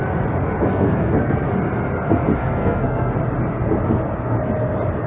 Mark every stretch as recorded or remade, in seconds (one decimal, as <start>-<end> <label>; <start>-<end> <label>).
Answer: 0.0-0.7 recorded; 0.7-1.5 remade; 1.5-2.4 recorded; 2.4-3.1 remade; 3.1-5.1 recorded